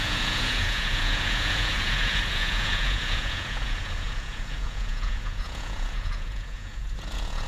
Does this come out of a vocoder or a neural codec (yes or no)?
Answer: yes